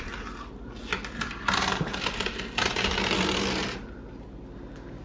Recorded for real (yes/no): yes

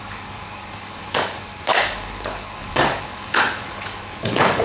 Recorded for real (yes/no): no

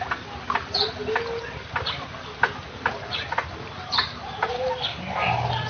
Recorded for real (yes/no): yes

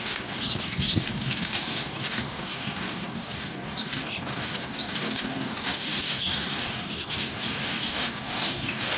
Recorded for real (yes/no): no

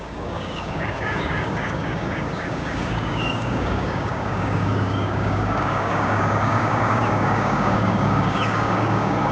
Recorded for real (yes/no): no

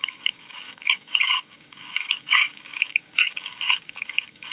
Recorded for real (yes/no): no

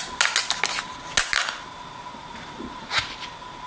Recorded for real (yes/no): yes